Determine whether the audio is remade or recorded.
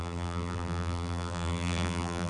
remade